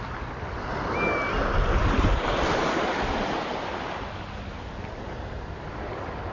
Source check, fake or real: real